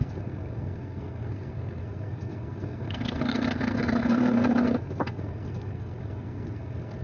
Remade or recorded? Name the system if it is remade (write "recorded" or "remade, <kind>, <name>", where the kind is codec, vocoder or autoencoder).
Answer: remade, codec, SNAC